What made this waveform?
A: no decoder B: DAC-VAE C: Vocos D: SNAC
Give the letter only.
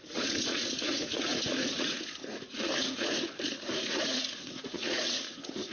C